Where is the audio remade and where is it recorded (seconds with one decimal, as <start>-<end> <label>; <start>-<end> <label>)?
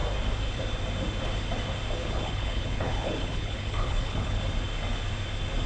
0.0-2.0 recorded; 2.0-4.4 remade; 4.4-5.7 recorded